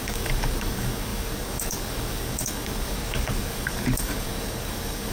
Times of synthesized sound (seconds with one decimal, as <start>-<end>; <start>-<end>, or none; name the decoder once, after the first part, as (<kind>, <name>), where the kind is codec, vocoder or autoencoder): 0.0-5.1 (codec, DAC)